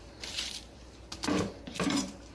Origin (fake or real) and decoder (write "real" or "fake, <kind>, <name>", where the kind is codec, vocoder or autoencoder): fake, vocoder, BigVGAN v2